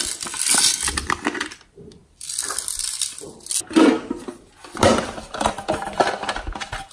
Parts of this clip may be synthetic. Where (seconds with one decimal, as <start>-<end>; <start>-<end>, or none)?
none

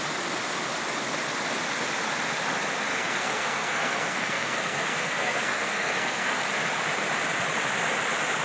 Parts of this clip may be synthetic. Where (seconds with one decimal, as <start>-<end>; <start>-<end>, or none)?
2.9-6.4

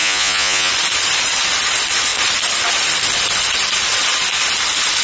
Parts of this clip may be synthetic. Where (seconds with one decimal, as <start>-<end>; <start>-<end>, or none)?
0.0-0.7

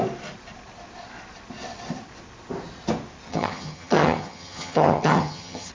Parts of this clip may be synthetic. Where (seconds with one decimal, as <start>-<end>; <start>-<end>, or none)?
3.3-5.7

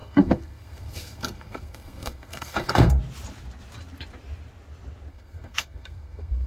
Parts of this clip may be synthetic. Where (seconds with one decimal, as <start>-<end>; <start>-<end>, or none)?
0.0-3.0; 5.1-6.5

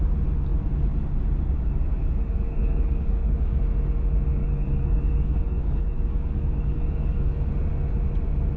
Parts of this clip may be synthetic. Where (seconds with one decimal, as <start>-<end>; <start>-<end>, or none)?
1.9-3.6; 4.4-7.5

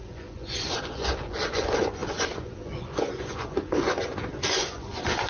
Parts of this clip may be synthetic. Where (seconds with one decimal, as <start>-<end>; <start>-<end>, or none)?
0.0-5.3